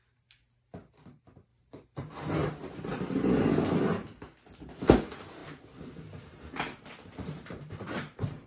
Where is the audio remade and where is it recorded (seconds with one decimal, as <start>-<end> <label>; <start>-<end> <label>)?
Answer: 0.0-1.5 recorded; 1.5-2.3 remade; 2.3-5.4 recorded; 5.4-8.5 remade